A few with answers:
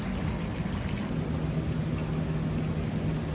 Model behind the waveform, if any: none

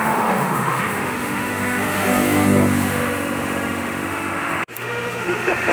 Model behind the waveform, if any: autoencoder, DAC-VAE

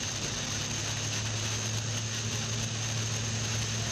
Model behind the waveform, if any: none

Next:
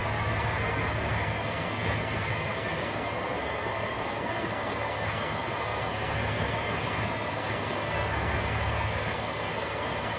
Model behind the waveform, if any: codec, SNAC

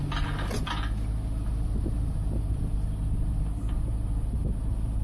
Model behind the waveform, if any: none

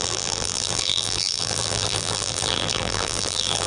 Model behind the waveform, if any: vocoder, BigVGAN v2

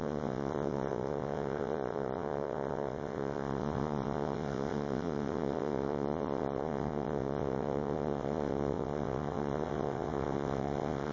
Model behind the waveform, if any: vocoder, WaveNeXt